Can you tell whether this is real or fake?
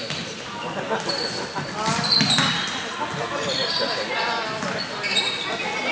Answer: real